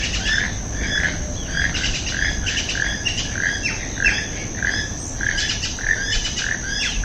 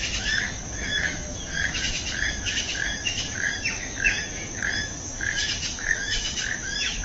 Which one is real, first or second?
first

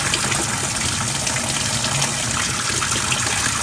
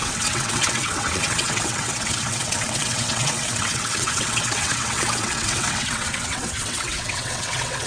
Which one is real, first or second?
first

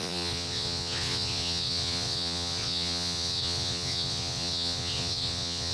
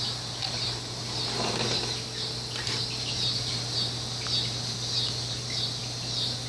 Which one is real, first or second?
second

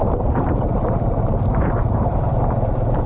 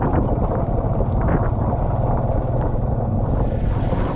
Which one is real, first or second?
second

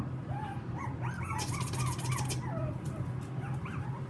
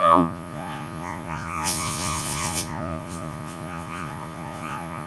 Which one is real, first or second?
first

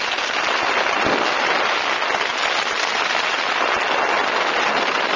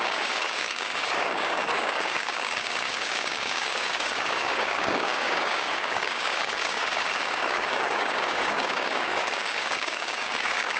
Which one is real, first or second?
first